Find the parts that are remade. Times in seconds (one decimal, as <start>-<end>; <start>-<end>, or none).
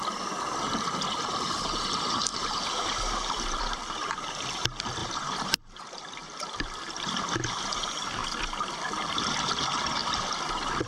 2.3-4.4; 5.0-7.1